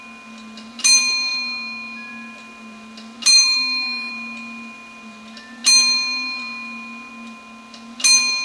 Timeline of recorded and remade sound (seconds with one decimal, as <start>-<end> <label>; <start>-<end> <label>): 0.0-3.3 recorded; 3.3-4.1 remade; 4.1-8.4 recorded